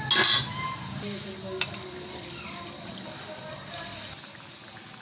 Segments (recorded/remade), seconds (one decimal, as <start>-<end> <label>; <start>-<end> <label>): 0.0-5.0 recorded